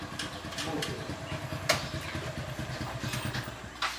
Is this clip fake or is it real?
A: real